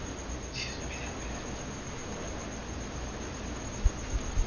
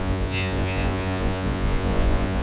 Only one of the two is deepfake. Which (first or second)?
second